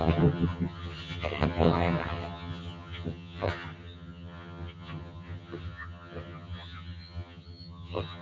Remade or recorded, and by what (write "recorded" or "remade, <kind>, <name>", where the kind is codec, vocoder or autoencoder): remade, vocoder, HiFi-GAN